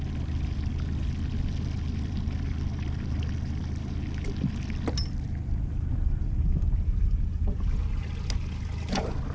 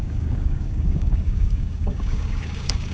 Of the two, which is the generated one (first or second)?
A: second